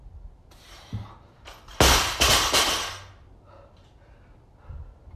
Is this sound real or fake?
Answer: real